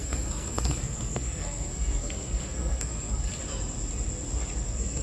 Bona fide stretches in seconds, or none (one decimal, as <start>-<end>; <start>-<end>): 3.3-4.6